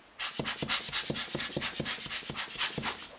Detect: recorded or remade recorded